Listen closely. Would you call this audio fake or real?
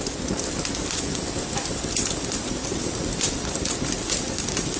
real